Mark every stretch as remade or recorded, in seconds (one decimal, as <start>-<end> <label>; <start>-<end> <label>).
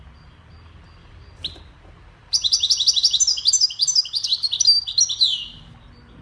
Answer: 0.0-1.0 recorded; 1.0-1.6 remade; 1.6-2.2 recorded; 2.2-2.9 remade; 2.9-6.2 recorded